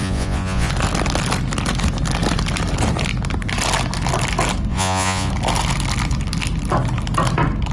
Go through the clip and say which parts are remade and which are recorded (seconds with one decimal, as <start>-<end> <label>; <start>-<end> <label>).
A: 0.0-0.7 remade; 0.7-4.7 recorded; 4.7-5.3 remade; 5.3-7.7 recorded